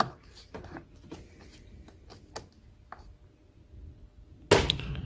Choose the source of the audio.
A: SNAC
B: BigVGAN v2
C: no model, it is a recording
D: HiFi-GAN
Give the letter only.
C